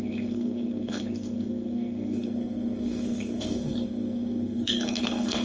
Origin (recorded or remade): remade